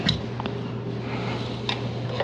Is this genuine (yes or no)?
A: yes